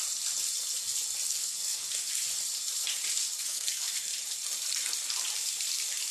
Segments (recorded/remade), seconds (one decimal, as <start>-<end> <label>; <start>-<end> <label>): 0.0-1.3 recorded; 1.3-2.1 remade; 2.1-3.4 recorded; 3.4-4.1 remade; 4.1-6.1 recorded